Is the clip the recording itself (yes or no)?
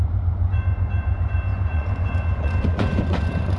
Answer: no